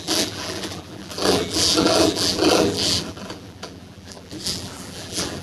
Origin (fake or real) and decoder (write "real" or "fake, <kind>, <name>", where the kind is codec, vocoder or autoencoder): fake, vocoder, BigVGAN v2